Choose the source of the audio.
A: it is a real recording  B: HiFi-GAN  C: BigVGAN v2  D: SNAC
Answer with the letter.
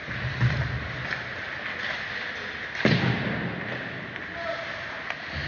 A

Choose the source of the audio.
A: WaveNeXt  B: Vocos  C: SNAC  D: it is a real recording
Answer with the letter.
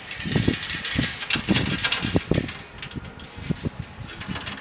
D